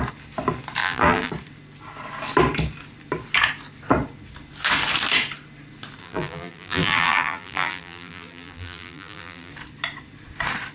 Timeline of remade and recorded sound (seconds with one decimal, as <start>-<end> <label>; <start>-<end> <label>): 0.0-0.8 recorded; 0.8-1.3 remade; 1.3-6.0 recorded; 6.0-9.5 remade; 9.5-10.7 recorded